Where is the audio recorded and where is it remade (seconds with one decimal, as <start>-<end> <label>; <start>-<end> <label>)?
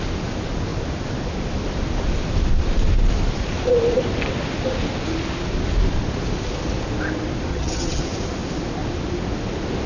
0.0-7.5 recorded; 7.5-8.0 remade; 8.0-9.9 recorded